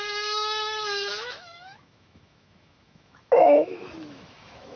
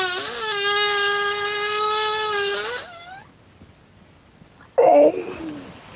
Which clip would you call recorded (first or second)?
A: second